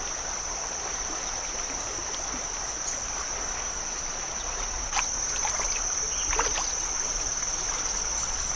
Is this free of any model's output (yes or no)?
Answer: yes